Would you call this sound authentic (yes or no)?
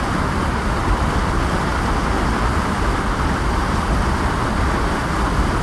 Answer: yes